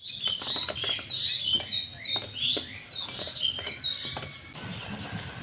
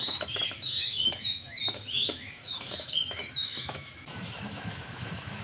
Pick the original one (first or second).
first